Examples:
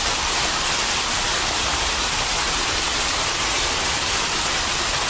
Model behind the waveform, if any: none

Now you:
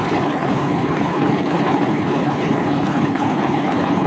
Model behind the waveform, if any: codec, HILCodec